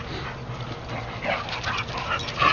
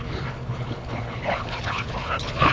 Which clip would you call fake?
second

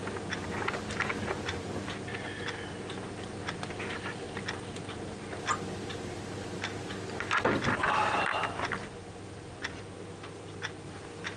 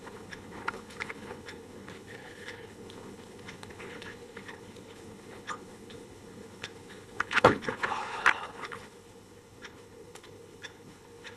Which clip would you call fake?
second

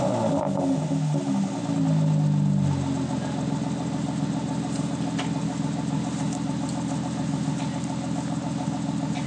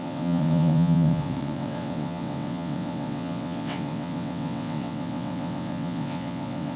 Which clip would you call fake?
second